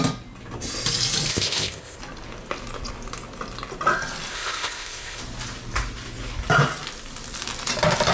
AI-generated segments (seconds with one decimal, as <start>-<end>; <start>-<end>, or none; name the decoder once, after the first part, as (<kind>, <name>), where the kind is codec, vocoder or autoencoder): 1.3-2.0 (codec, ZipCodec); 4.3-5.2

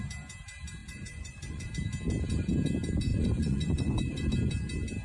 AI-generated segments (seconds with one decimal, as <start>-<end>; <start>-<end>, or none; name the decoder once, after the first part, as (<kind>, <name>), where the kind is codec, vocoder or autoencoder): 0.8-1.7 (vocoder, Vocos); 3.1-4.3

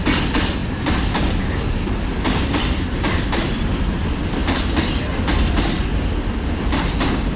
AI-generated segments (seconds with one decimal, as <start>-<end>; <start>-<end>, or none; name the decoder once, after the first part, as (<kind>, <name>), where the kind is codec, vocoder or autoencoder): none

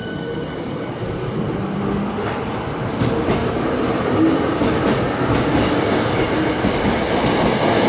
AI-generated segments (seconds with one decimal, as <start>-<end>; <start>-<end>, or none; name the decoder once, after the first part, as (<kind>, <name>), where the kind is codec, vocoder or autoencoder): none

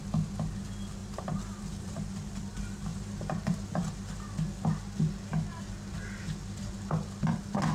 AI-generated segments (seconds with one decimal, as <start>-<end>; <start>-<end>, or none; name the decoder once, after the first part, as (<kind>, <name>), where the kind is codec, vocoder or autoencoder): 1.0-2.3 (vocoder, BigVGAN v2); 2.9-4.1

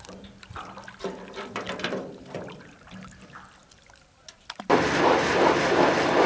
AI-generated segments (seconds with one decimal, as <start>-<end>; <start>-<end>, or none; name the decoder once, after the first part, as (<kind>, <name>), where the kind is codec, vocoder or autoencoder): none